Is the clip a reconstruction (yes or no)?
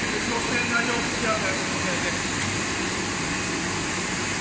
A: no